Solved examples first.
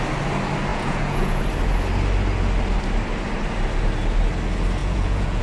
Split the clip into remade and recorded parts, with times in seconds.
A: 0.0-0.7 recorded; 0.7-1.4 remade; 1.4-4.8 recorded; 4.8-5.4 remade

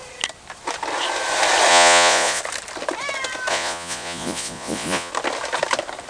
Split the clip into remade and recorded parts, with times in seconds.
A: 0.0-1.7 recorded; 1.7-2.4 remade; 2.4-3.5 recorded; 3.5-5.1 remade; 5.1-6.1 recorded

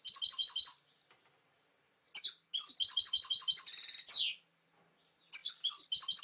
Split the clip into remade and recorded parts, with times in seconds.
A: 0.0-6.2 recorded

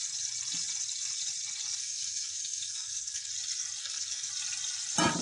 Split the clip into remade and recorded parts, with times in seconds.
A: 0.0-1.8 recorded; 1.8-3.3 remade; 3.3-3.8 recorded; 3.8-4.3 remade; 4.3-5.2 recorded

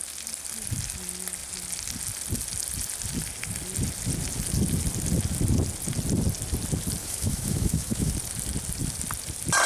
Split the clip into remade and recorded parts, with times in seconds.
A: 0.0-7.0 recorded; 7.0-8.1 remade; 8.1-9.7 recorded